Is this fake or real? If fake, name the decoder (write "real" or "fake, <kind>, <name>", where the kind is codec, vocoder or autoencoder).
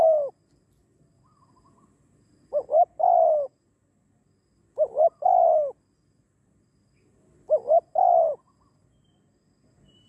real